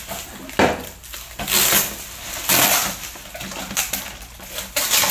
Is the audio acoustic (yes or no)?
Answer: yes